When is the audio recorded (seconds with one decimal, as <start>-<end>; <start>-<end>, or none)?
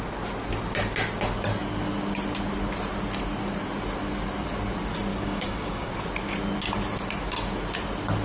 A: 0.0-5.1; 5.9-8.2